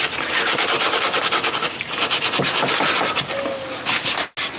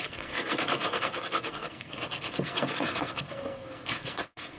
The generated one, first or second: second